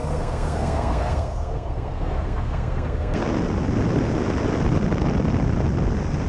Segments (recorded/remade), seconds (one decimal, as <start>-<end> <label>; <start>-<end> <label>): 0.0-3.2 remade; 3.2-6.3 recorded